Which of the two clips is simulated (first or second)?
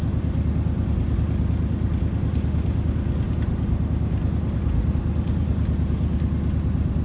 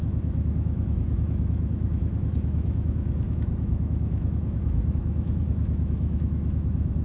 second